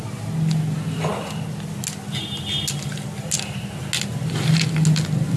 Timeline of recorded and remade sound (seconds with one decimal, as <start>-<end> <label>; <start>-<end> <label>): 0.0-5.4 recorded